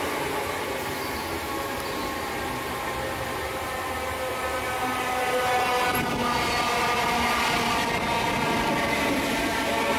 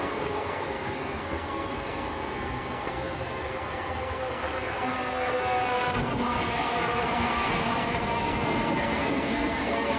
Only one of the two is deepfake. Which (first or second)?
second